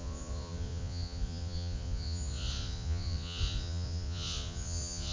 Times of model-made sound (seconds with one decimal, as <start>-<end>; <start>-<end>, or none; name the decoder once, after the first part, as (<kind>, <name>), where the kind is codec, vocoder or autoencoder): 0.0-5.1 (vocoder, Vocos)